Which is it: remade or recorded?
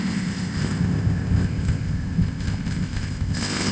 remade